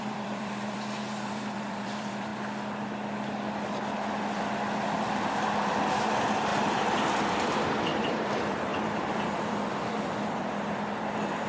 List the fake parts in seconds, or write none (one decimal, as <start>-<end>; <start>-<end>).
0.0-2.3; 5.3-11.5